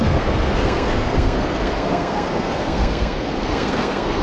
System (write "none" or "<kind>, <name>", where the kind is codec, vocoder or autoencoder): codec, SNAC